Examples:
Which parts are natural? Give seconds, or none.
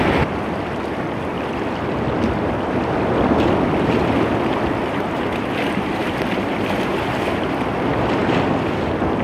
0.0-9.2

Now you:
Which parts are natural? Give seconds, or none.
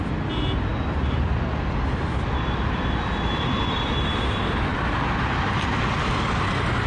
0.0-0.7; 1.4-6.9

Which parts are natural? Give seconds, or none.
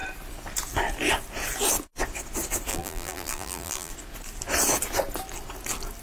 0.0-2.7; 3.9-6.0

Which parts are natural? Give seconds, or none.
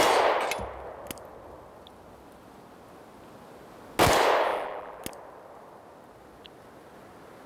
0.0-4.5; 5.0-7.5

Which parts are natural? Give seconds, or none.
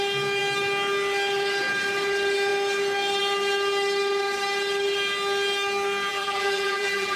0.0-6.1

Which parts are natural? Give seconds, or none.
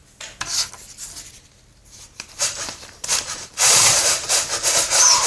0.0-1.8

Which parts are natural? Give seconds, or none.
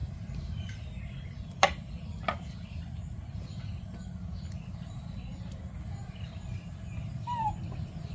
0.0-8.1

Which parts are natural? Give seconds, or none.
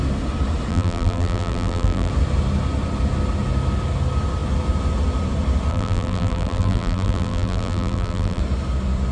0.0-0.7; 2.1-5.7; 8.4-9.1